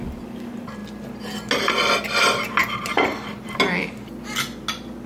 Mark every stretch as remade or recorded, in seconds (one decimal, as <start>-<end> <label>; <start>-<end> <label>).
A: 0.0-2.6 recorded; 2.6-3.6 remade; 3.6-5.1 recorded